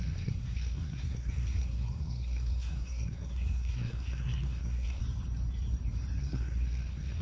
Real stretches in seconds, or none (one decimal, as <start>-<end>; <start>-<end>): 5.0-6.2